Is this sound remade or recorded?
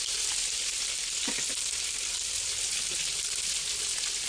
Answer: recorded